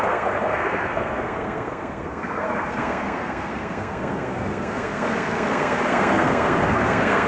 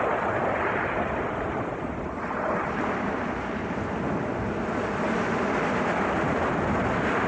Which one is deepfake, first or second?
first